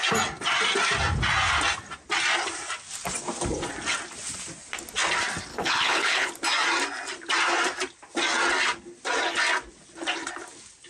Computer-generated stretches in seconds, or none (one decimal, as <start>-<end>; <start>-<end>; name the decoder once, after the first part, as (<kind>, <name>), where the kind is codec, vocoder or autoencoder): 5.5-6.3 (codec, HILCodec)